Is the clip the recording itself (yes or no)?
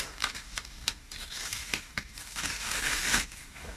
no